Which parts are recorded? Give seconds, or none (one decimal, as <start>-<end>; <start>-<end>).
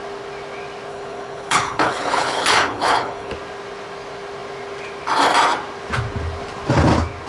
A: 0.0-0.9; 3.3-7.3